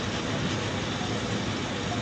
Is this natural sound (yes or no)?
yes